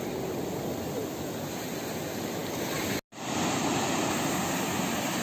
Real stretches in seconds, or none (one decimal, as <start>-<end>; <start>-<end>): 0.0-5.2